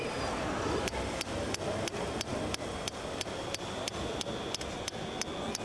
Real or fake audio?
real